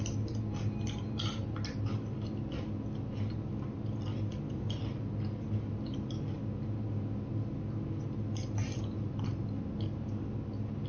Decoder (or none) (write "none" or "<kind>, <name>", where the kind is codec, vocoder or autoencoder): none